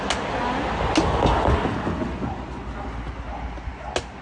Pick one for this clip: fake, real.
real